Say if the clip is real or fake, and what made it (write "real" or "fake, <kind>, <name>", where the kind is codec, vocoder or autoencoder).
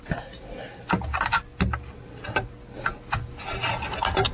real